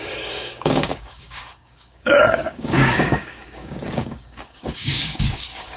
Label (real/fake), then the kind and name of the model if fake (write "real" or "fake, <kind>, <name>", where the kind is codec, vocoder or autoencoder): fake, codec, DAC